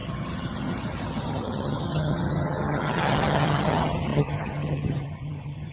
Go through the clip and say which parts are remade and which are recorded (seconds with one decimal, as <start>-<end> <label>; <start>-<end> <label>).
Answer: 0.0-5.7 remade